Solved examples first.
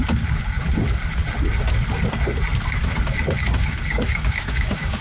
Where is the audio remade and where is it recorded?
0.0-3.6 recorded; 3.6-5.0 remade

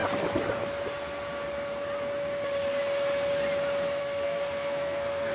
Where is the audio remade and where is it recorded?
0.0-4.0 recorded; 4.0-5.3 remade

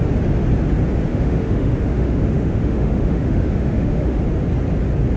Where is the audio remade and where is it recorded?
0.0-1.1 recorded; 1.1-4.2 remade; 4.2-5.2 recorded

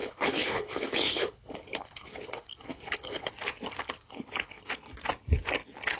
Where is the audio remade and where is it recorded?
0.0-3.3 remade; 3.3-4.0 recorded; 4.0-4.6 remade; 4.6-6.0 recorded